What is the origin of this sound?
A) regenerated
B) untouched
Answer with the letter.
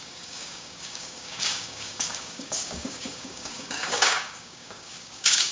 A